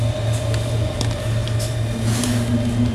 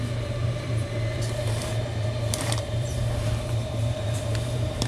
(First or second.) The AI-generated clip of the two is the second